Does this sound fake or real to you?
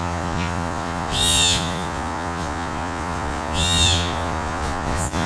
fake